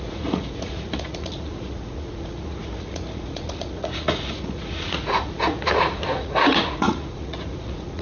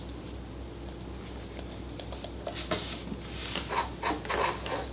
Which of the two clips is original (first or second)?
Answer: second